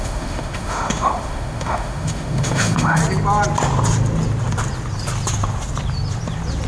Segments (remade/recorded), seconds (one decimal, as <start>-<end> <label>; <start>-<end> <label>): 0.0-3.0 remade; 3.0-6.7 recorded